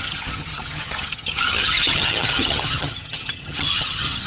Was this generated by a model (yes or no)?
yes